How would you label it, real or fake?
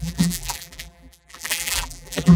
fake